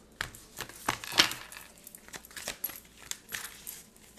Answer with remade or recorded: recorded